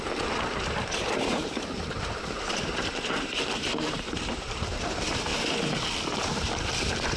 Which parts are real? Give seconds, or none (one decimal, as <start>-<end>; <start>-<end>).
5.3-6.1